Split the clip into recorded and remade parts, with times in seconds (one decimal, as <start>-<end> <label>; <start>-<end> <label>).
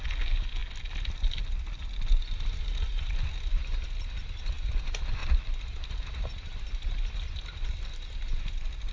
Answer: 0.0-8.9 recorded